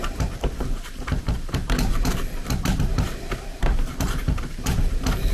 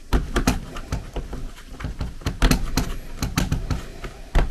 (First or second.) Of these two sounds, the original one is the second